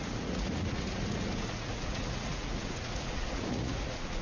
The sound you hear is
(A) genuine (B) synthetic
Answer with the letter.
B